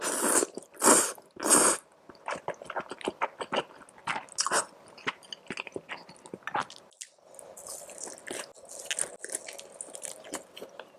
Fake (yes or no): no